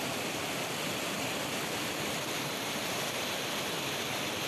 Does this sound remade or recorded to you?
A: recorded